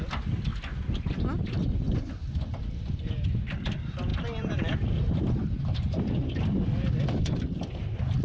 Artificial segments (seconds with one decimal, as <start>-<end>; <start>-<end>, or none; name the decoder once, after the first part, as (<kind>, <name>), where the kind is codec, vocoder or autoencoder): none